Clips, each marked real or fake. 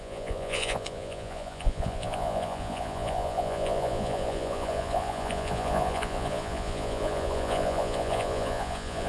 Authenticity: fake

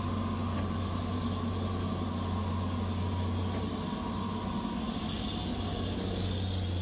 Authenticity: real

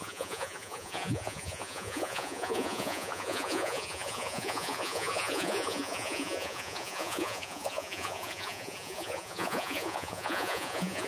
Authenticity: fake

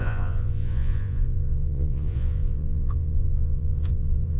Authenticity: fake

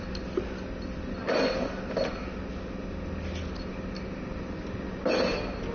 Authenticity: real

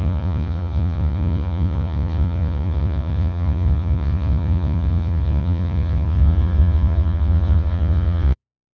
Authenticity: fake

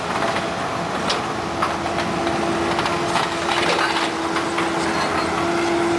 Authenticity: real